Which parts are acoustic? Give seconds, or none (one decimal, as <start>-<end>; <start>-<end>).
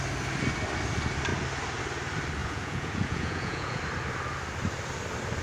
0.0-2.4; 3.8-5.4